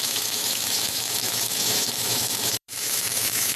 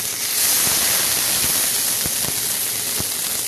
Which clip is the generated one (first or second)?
first